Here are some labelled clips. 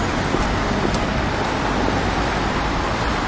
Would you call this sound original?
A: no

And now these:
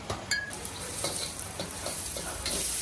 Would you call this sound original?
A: no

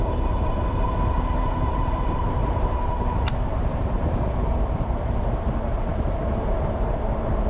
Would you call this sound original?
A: no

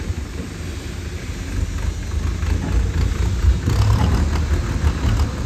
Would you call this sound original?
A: yes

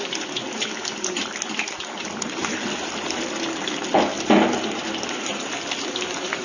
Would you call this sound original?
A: no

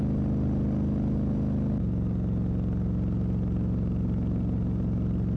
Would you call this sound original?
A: yes